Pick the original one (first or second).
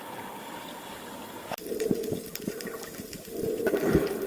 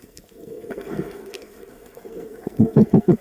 first